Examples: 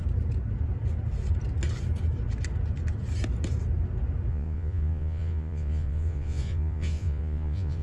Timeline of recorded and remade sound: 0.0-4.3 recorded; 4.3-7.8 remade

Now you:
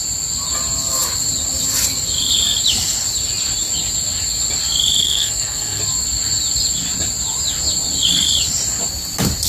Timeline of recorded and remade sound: 0.0-5.0 recorded; 5.0-5.8 remade; 5.8-9.5 recorded